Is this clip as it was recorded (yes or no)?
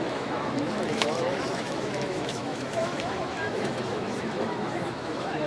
no